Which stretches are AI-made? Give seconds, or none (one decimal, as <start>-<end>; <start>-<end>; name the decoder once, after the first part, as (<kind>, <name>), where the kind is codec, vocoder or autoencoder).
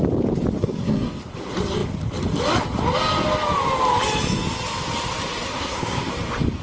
0.6-1.2 (codec, SNAC); 5.5-6.1